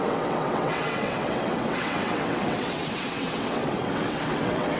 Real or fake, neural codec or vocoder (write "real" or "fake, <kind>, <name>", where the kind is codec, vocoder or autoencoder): fake, vocoder, WaveNeXt